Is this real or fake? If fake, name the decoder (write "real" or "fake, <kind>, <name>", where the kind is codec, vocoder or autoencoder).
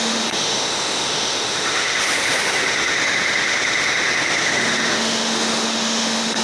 fake, autoencoder, DAC-VAE